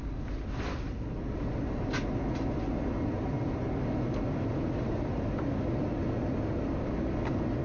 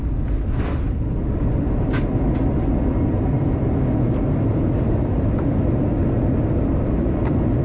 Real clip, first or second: first